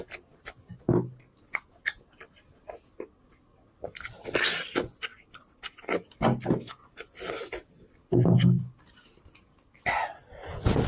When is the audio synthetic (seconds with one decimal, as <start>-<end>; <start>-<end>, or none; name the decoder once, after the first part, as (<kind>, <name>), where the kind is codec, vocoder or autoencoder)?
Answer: none